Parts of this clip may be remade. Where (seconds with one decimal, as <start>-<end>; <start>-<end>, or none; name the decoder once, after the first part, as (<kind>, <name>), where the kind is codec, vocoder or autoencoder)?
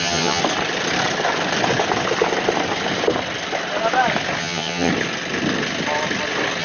0.0-0.4 (vocoder, HiFi-GAN); 4.4-4.9